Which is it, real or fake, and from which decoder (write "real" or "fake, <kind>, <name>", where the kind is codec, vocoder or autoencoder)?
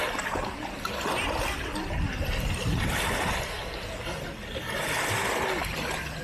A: real